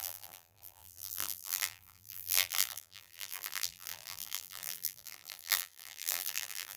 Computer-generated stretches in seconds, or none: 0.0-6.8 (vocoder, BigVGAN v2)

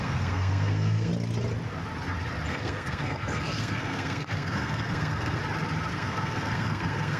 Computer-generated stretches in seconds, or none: 0.0-1.1 (codec, SNAC); 2.5-5.4; 5.9-7.2

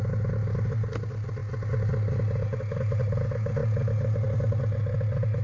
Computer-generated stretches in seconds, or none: none

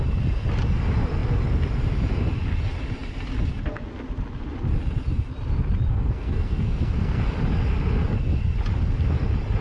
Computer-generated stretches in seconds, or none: 5.9-7.2 (codec, SNAC)